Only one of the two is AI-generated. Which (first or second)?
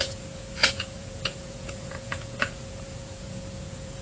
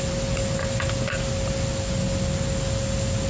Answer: first